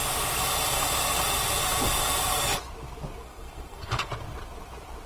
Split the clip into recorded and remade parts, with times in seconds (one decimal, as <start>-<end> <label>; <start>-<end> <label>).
0.0-3.2 recorded; 3.2-4.1 remade; 4.1-5.1 recorded